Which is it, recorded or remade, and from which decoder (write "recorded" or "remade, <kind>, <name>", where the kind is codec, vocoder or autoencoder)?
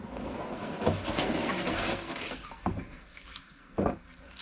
remade, codec, SNAC